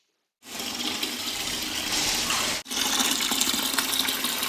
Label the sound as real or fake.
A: real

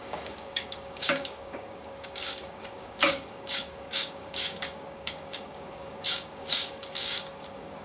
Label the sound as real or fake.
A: fake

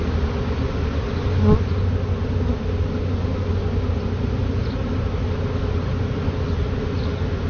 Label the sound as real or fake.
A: real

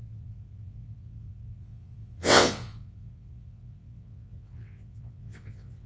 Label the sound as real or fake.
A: fake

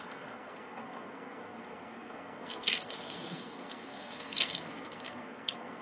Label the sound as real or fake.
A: fake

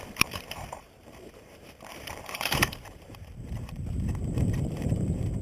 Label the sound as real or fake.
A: fake